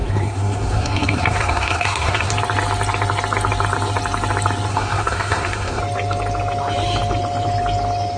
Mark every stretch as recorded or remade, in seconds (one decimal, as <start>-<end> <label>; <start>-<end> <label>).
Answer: 0.0-2.3 remade; 2.3-4.7 recorded; 4.7-5.8 remade; 5.8-8.2 recorded